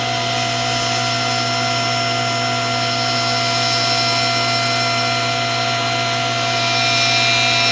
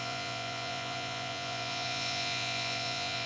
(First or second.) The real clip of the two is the first